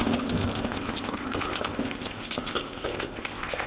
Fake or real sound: fake